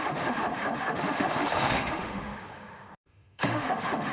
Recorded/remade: remade